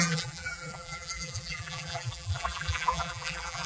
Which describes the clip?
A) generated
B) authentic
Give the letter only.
A